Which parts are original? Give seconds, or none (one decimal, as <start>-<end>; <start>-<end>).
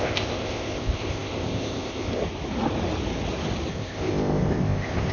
2.2-3.7